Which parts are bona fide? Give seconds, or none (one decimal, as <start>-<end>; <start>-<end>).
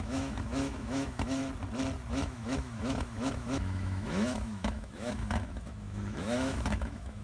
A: 1.4-2.1